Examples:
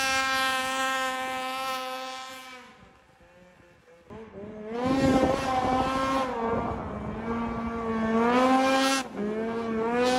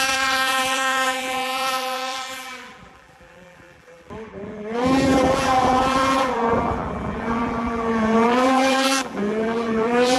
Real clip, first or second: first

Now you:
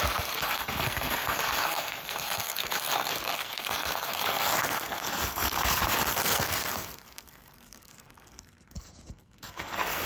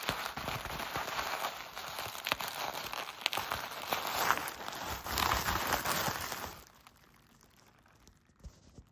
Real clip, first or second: second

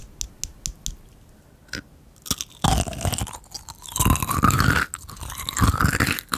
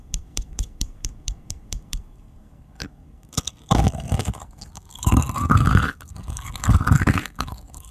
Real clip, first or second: first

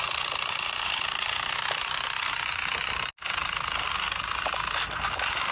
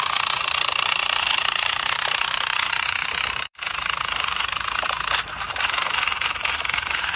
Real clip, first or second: first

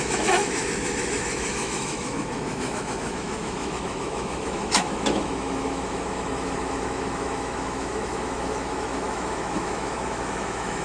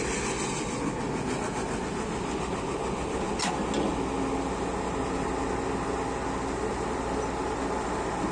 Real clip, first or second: second